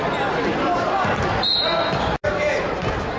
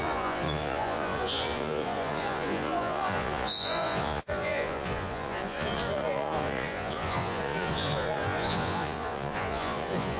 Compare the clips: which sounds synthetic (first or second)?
second